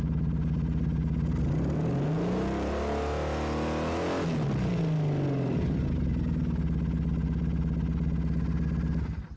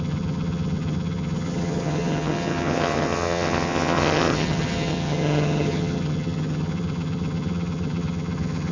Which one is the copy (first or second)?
second